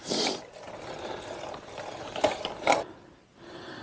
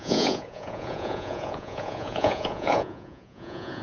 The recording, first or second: first